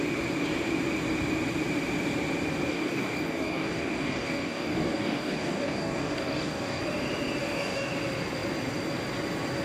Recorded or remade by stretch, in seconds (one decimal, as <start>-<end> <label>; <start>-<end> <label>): 0.0-2.7 recorded; 2.7-6.8 remade; 6.8-7.4 recorded; 7.4-7.9 remade; 7.9-9.6 recorded